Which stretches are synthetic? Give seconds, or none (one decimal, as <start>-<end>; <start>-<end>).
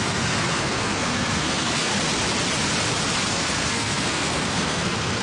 0.0-1.9; 3.3-5.2